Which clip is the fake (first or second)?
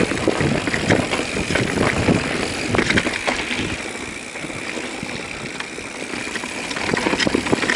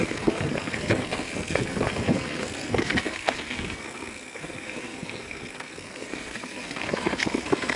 second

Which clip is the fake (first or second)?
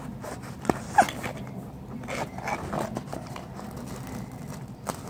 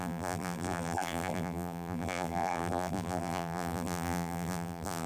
second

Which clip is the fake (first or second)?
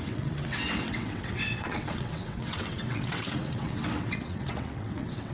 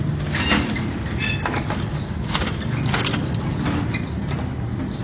first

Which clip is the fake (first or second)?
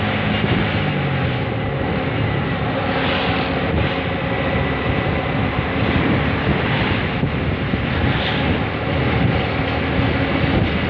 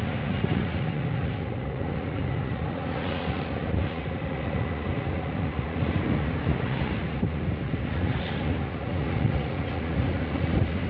second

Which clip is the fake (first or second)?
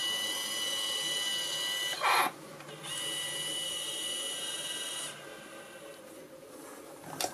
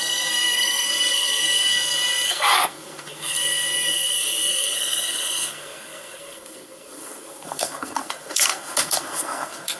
second